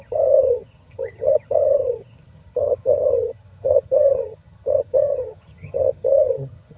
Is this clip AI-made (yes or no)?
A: yes